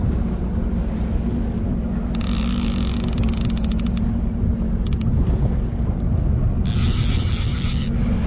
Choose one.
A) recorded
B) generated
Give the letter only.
A